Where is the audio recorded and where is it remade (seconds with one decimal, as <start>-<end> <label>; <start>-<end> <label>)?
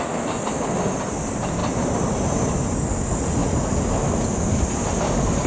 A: 0.0-5.5 recorded